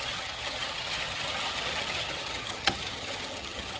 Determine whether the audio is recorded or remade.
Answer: remade